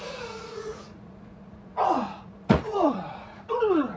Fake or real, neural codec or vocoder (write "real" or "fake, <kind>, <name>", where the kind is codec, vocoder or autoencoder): fake, vocoder, Vocos